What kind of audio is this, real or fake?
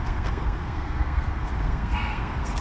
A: fake